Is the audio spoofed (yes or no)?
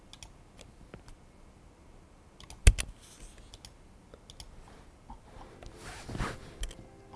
no